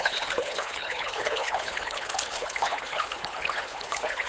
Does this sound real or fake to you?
fake